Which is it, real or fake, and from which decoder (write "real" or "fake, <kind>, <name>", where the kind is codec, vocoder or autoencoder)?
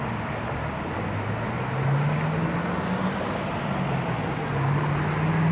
real